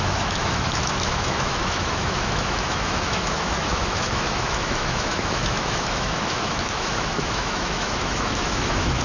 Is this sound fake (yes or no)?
yes